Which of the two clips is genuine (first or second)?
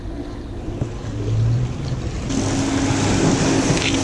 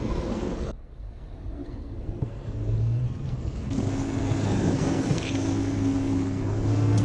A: first